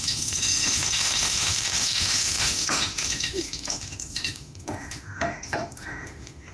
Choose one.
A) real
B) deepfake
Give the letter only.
B